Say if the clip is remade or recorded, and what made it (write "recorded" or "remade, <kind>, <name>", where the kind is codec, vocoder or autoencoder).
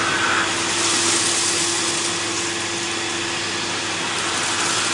recorded